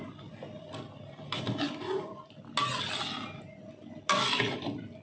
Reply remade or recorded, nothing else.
recorded